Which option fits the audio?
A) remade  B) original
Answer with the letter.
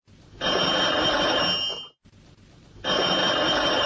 B